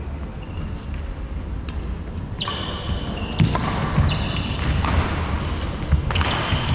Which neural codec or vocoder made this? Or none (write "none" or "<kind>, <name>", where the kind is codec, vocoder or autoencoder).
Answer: none